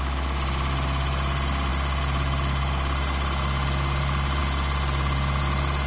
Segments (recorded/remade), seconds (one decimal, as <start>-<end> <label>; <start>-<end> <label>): 0.0-5.9 recorded